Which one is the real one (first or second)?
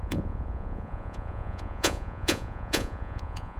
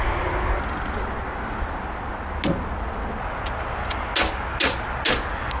second